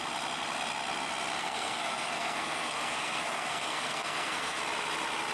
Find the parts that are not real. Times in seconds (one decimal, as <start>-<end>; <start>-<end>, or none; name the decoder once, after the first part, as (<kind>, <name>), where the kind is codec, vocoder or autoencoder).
1.4-4.6 (codec, SNAC)